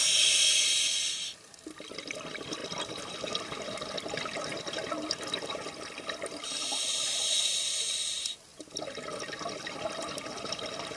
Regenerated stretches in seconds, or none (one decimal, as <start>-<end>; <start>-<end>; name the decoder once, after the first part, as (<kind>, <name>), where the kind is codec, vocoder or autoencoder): 2.6-3.9 (vocoder, BigVGAN v2)